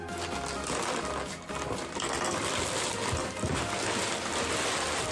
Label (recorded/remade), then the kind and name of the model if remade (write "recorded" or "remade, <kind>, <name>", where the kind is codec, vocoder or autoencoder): recorded